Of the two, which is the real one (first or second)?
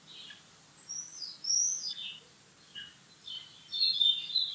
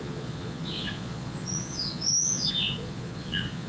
first